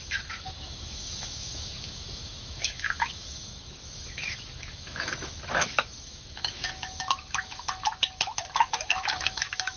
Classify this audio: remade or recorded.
remade